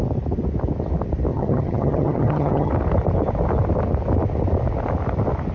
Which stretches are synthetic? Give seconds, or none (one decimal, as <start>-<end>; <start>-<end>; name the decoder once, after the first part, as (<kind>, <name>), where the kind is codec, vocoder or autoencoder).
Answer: 1.3-2.7 (vocoder, HiFi-GAN)